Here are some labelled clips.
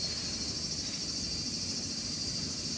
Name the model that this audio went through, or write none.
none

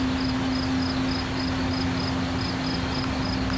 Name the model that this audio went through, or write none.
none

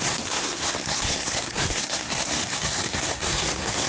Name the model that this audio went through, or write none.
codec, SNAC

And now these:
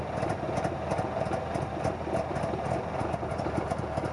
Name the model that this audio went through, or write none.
none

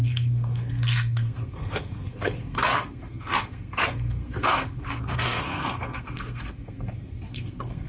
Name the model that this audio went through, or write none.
codec, SNAC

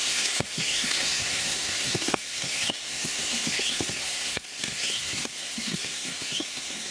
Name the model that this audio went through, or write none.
codec, SNAC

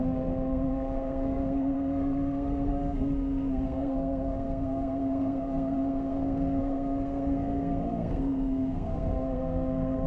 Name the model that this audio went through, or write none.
codec, SNAC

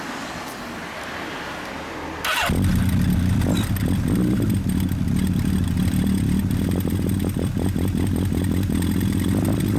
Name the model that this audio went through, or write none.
none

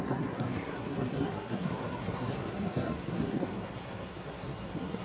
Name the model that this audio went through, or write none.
codec, SNAC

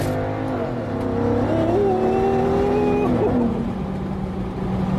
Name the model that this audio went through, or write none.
none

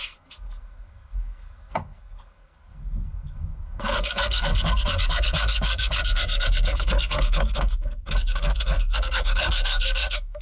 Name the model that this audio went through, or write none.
codec, SNAC